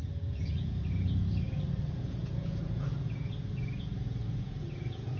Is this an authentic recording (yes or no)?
no